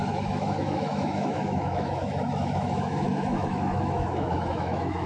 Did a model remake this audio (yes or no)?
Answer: yes